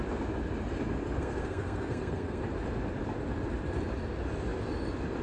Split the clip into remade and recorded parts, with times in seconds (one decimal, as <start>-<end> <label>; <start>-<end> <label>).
0.0-1.2 recorded; 1.2-2.4 remade; 2.4-5.2 recorded